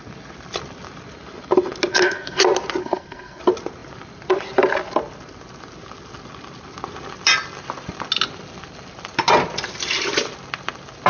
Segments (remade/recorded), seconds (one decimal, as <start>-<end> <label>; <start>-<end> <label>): 0.0-1.9 recorded; 1.9-2.4 remade; 2.4-2.8 recorded; 2.8-3.4 remade; 3.4-11.1 recorded

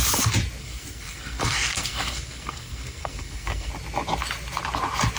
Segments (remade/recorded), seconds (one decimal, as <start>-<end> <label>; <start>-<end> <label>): 0.0-0.6 recorded; 0.6-3.7 remade; 3.7-5.2 recorded